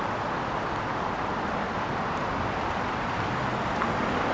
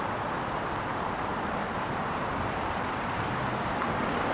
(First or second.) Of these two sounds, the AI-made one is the second